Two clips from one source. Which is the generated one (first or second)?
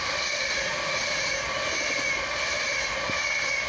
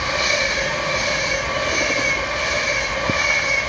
first